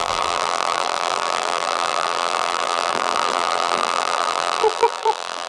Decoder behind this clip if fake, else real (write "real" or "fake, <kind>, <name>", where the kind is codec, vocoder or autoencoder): fake, vocoder, BigVGAN v2